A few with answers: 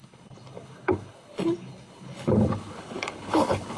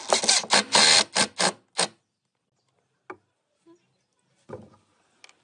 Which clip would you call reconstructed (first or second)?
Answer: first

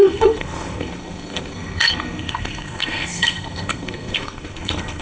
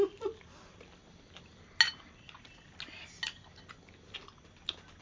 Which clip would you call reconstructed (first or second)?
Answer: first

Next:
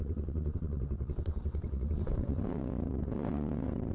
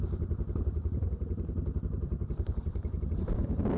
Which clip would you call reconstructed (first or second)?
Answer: first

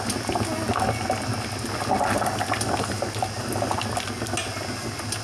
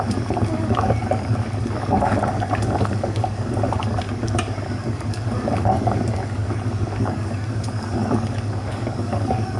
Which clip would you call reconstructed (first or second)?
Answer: second